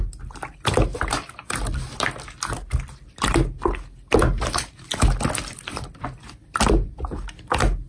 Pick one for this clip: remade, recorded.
recorded